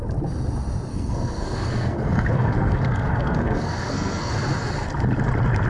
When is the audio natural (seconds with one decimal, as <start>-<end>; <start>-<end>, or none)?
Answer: 0.0-0.9; 4.3-5.7